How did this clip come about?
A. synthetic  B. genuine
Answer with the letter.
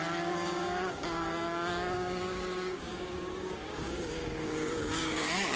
A